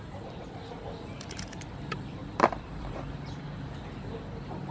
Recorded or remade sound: remade